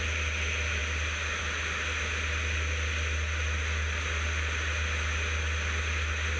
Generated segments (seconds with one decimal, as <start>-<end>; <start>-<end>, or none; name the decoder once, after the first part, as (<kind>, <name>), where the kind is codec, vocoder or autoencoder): none